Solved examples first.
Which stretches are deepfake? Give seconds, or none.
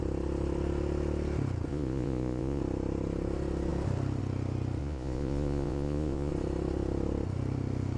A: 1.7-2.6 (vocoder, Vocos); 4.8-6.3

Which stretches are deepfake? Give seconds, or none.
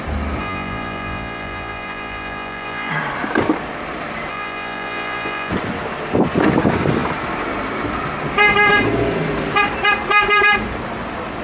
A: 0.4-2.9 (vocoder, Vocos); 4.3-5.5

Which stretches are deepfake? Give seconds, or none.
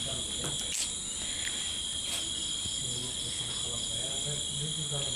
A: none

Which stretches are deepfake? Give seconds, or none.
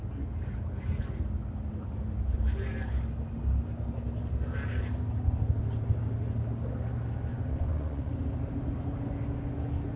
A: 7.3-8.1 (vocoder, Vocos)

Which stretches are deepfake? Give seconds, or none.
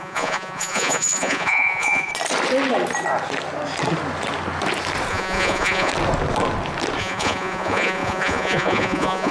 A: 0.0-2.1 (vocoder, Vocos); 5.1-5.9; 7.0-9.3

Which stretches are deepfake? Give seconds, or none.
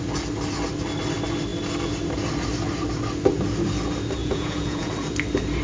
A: 4.2-4.9 (vocoder, Vocos)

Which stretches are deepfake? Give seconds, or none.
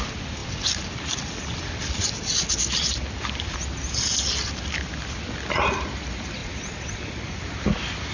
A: 6.4-7.0 (vocoder, Vocos)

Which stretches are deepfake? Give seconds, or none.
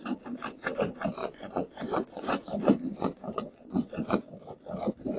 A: 1.2-4.2 (vocoder, Vocos)